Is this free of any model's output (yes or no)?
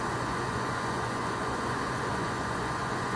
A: no